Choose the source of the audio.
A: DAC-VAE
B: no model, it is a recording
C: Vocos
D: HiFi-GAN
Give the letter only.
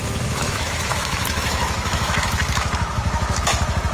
A